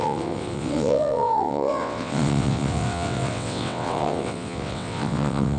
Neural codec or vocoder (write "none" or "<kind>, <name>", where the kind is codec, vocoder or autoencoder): vocoder, WaveNeXt